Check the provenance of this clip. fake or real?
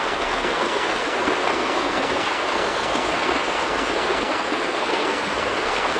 fake